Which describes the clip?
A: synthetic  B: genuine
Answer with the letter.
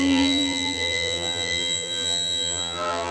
A